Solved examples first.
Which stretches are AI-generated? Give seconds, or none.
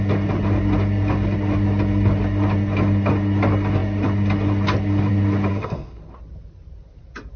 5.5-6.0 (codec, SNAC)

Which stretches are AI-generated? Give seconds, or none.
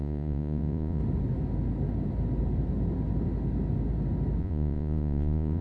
0.0-1.0 (vocoder, Vocos); 4.4-5.6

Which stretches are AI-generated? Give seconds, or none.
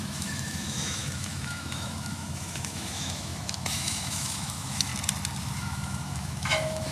0.0-4.9 (autoencoder, DAC-VAE); 5.4-6.9